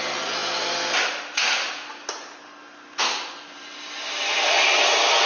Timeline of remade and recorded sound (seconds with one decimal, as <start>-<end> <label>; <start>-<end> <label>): 0.0-5.3 recorded